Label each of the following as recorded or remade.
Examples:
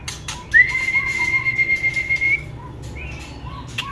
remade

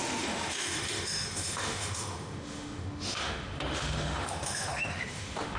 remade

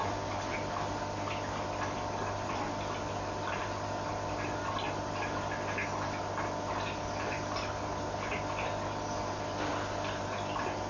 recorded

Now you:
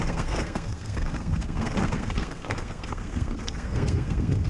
remade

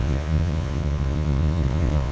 remade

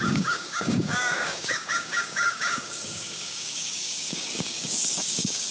remade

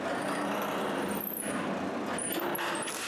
recorded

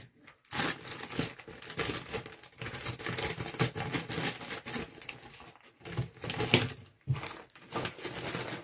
recorded